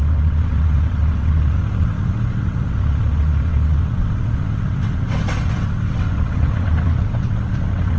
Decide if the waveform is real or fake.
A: fake